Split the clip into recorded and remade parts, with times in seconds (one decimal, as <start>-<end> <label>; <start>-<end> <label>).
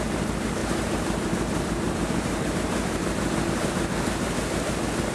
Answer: 0.0-0.6 recorded; 0.6-3.7 remade; 3.7-5.1 recorded